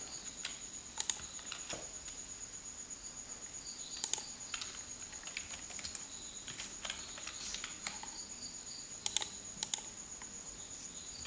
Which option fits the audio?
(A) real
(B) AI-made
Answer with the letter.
A